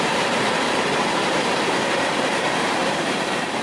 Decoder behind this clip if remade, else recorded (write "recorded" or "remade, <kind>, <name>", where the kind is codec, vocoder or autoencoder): remade, vocoder, BigVGAN v2